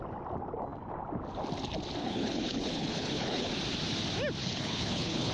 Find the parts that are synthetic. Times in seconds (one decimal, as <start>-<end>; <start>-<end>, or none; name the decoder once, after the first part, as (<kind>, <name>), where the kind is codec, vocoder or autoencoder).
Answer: 2.0-3.5 (codec, HILCodec); 4.4-5.3